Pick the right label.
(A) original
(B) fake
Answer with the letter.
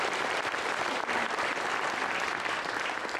B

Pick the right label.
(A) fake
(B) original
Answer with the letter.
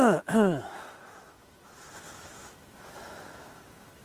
A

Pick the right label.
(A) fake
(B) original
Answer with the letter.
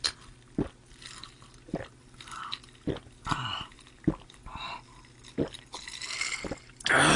B